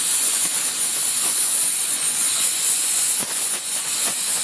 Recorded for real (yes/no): no